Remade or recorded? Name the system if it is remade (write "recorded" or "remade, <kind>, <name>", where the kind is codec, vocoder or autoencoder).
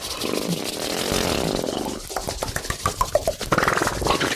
recorded